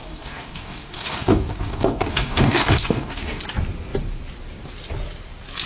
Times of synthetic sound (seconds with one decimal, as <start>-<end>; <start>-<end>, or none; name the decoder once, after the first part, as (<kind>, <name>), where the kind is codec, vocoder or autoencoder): 0.0-3.4 (codec, DAC)